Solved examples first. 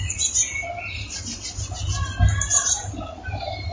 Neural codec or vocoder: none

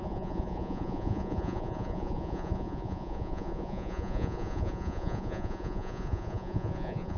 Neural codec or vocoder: vocoder, Vocos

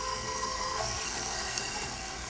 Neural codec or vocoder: codec, SNAC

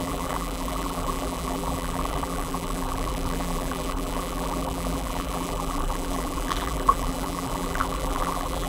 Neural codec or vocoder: vocoder, BigVGAN v2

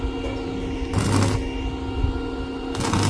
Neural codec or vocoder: none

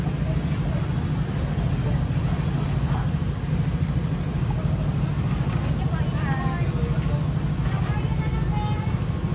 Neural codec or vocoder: none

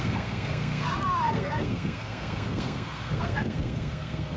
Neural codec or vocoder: codec, SNAC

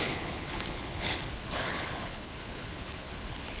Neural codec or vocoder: codec, HILCodec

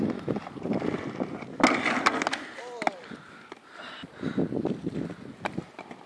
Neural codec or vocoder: none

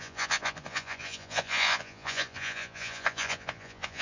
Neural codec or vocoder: vocoder, Vocos